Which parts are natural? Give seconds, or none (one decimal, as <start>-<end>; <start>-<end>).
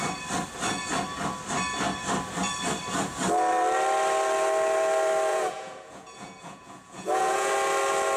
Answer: 0.0-5.3; 7.5-8.2